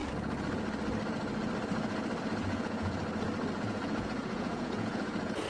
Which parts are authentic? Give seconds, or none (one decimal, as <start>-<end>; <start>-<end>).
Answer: 0.0-2.2; 3.0-3.6